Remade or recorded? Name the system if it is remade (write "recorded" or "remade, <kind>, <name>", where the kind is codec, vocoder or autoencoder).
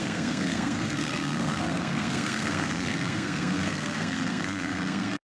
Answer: remade, codec, SNAC